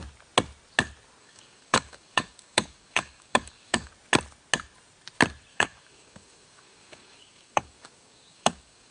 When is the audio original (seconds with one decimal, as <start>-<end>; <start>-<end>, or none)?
0.0-1.2; 3.9-5.5